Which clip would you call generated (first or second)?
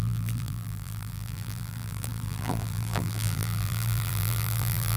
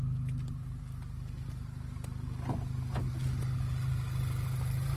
first